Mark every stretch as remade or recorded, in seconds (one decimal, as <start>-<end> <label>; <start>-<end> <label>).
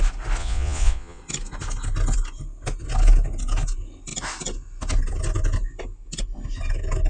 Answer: 0.0-0.4 recorded; 0.4-1.2 remade; 1.2-7.1 recorded